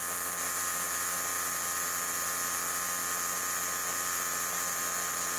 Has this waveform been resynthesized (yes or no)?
no